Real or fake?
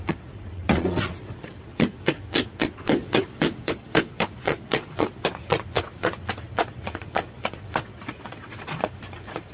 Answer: fake